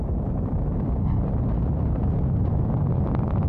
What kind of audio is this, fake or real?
fake